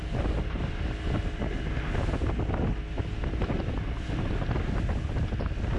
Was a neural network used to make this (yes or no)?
no